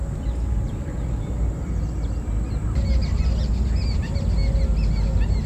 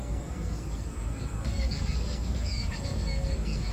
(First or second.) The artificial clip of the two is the second